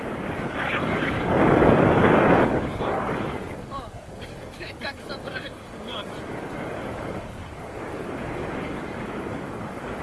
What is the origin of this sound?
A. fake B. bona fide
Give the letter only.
A